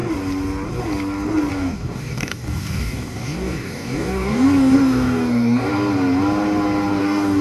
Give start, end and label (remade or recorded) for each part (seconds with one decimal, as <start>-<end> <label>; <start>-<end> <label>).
0.0-1.5 recorded; 1.5-5.7 remade; 5.7-7.0 recorded; 7.0-7.4 remade